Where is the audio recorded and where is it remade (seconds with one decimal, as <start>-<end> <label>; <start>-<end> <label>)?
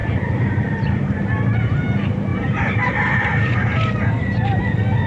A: 0.0-1.2 remade; 1.2-2.3 recorded; 2.3-4.2 remade; 4.2-5.1 recorded